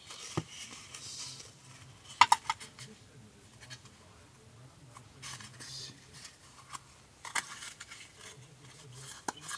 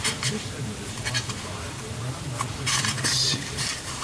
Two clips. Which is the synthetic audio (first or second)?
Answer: second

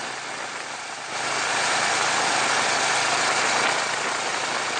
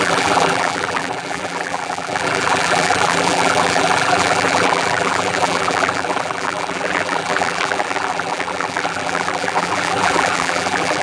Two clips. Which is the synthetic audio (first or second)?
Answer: second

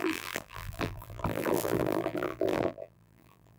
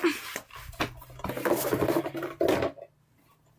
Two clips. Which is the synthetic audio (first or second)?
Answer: first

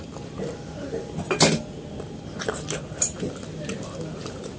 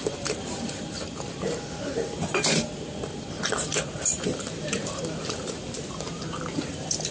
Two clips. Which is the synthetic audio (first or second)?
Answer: second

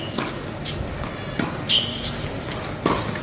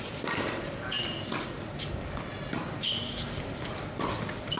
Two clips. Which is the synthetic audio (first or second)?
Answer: second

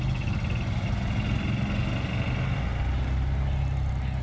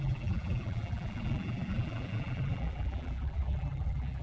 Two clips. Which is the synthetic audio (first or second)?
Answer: second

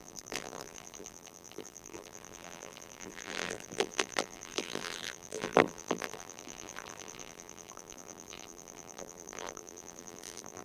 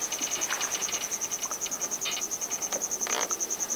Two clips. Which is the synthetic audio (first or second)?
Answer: first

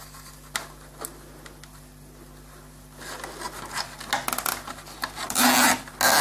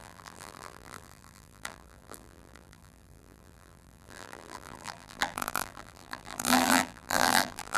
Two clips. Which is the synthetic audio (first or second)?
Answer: second